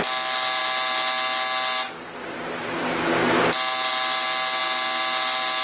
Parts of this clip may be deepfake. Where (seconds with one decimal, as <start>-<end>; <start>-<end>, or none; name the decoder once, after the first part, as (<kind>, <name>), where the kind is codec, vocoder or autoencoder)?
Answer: none